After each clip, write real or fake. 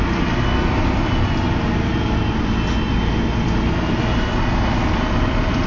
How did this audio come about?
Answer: real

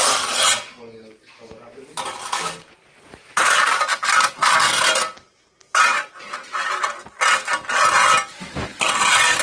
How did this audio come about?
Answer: real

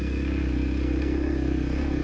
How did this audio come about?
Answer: fake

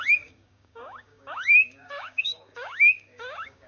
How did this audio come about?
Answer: fake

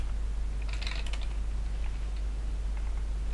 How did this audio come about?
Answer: real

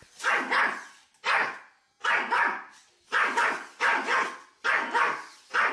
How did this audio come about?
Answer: real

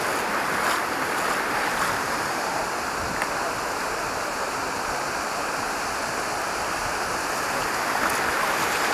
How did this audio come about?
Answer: real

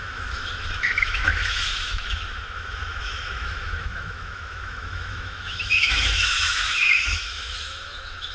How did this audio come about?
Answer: fake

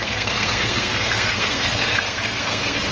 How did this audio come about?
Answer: fake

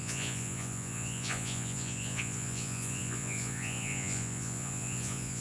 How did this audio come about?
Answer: fake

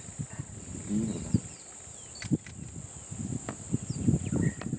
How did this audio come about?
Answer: real